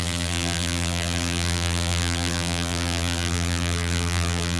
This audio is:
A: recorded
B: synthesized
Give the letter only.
B